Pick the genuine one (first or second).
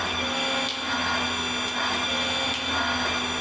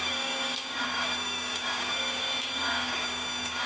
first